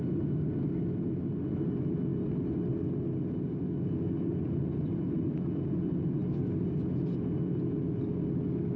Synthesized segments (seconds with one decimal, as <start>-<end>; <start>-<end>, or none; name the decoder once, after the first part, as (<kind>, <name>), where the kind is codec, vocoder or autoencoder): none